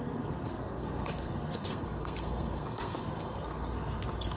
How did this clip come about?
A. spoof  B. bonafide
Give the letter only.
A